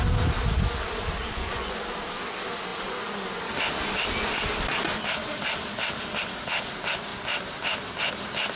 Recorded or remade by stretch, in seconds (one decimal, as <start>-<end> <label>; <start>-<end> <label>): 0.0-1.2 recorded; 1.2-1.8 remade; 1.8-8.5 recorded